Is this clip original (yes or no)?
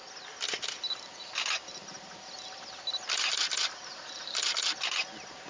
yes